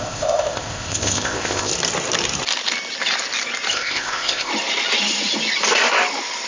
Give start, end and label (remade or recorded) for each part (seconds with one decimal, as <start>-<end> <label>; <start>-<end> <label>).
0.0-1.7 remade; 1.7-3.7 recorded; 3.7-4.5 remade; 4.5-6.5 recorded